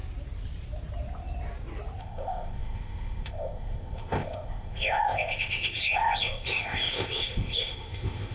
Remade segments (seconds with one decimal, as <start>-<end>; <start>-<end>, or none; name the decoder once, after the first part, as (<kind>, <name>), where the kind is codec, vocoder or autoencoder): 2.0-8.3 (codec, ZipCodec)